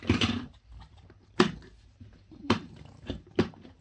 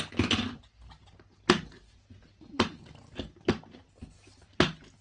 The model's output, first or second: first